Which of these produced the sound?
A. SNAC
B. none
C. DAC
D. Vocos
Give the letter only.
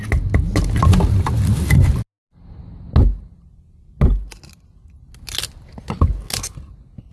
B